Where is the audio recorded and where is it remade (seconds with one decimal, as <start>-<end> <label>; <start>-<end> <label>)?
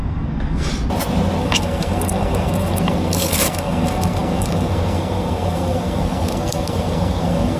0.0-0.7 remade; 0.7-1.4 recorded; 1.4-7.6 remade